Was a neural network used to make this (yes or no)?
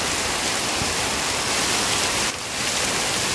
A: no